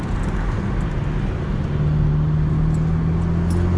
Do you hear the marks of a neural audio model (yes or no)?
no